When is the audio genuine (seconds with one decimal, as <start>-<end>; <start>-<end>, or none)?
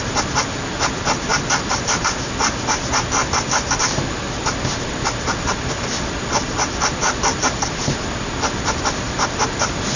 0.0-10.0